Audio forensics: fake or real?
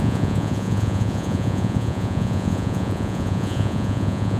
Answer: fake